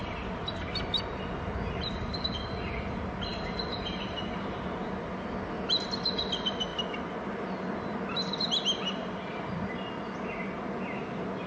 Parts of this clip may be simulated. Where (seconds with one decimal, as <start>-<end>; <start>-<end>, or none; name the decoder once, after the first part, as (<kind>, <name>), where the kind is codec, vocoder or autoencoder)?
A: none